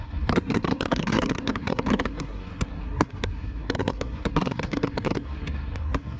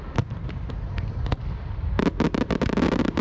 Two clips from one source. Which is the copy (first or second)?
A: first